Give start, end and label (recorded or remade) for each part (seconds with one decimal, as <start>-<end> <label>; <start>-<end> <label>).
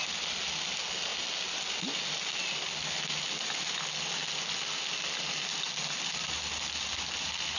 0.0-7.6 recorded